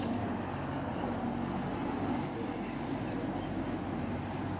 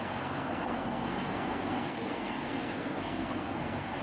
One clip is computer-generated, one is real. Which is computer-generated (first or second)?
second